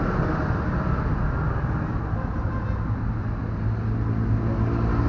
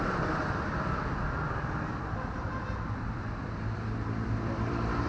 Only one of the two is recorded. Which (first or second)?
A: first